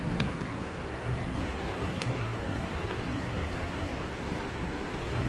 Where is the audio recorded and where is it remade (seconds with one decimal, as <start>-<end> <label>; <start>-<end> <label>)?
0.0-5.3 remade